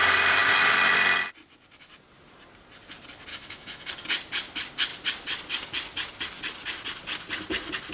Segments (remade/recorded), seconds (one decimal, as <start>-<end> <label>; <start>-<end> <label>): 0.0-3.3 recorded; 3.3-3.9 remade; 3.9-7.9 recorded